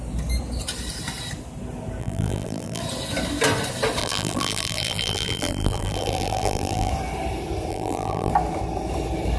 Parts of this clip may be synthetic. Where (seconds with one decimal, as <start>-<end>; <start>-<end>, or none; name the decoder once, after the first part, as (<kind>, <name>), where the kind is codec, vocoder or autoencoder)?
2.0-2.8 (vocoder, BigVGAN v2); 4.0-6.9; 7.7-8.3